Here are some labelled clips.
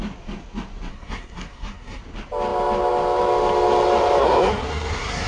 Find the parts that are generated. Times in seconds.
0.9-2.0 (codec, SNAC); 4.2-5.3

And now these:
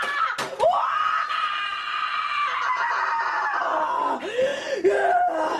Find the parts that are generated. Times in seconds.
none

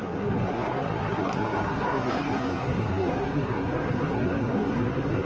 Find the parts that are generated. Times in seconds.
0.0-5.2 (codec, SNAC)

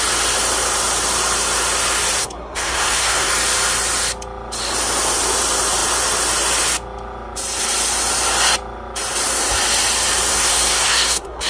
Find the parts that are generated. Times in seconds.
2.2-3.3 (codec, SNAC); 10.3-11.5

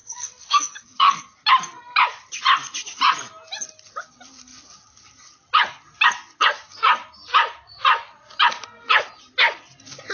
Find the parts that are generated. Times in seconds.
0.0-1.2 (codec, SNAC)